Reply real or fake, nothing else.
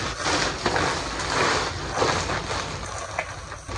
real